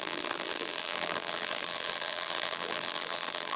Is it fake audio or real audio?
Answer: fake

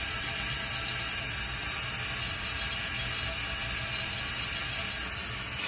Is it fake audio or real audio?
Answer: real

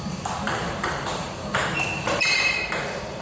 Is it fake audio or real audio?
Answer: fake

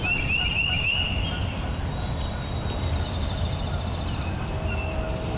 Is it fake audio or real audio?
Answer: real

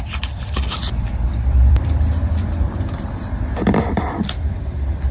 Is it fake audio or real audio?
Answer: fake